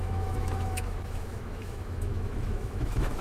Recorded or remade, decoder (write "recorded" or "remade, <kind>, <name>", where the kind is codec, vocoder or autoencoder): remade, autoencoder, DAC-VAE